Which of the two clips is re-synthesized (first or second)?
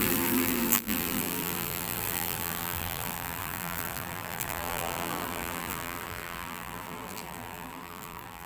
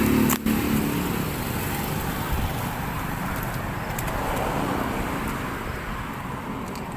first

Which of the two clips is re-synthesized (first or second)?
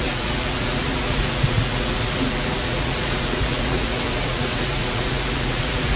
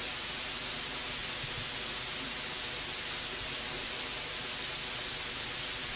first